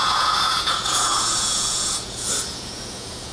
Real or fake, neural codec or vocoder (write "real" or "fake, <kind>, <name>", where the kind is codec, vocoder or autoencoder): fake, vocoder, Vocos